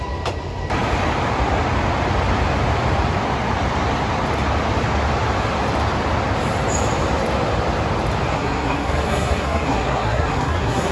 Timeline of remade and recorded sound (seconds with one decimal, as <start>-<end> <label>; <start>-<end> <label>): 0.0-8.3 recorded; 8.3-10.9 remade